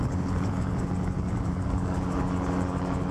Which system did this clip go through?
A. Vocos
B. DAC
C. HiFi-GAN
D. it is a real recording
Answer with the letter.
B